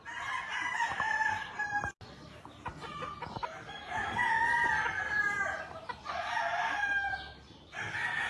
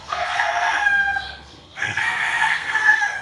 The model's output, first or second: second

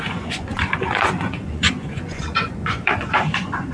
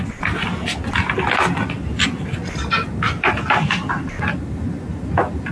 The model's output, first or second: first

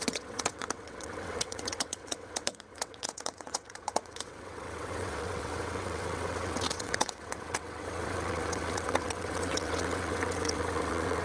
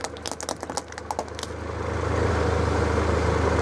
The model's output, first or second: first